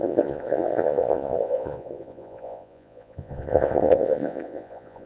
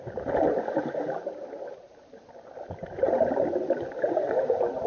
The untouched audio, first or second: second